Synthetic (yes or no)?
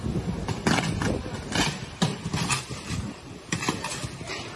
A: no